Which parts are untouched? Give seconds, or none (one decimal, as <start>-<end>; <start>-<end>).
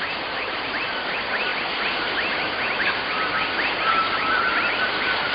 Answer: 0.0-5.3